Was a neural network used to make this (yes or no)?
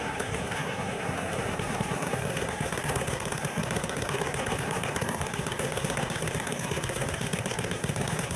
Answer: yes